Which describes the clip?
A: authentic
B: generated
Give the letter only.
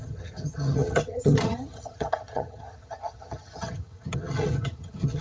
B